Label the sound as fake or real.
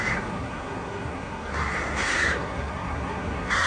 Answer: fake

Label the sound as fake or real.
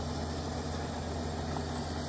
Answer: real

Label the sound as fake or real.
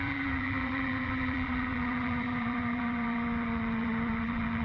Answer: fake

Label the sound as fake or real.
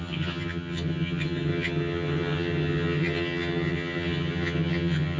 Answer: fake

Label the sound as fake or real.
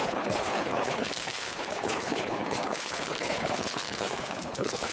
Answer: fake